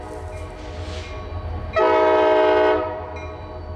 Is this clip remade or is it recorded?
recorded